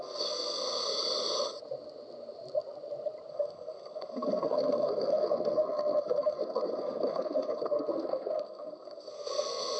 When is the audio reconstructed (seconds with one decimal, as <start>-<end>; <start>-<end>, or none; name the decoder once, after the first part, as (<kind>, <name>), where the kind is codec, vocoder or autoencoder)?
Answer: 0.0-0.9 (codec, SNAC); 3.3-9.8